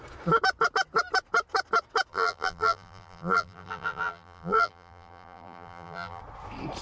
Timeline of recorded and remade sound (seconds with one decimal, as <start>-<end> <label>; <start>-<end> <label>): 0.0-2.1 recorded; 2.1-6.2 remade; 6.2-6.8 recorded